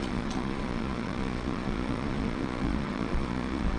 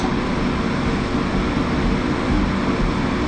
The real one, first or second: second